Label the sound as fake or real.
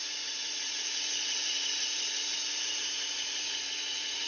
fake